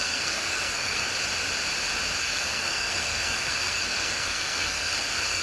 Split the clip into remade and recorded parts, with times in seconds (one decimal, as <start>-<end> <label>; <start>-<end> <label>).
0.0-1.1 remade; 1.1-2.2 recorded; 2.2-5.4 remade